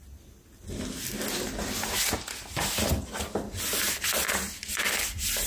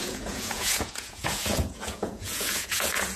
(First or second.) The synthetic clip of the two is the second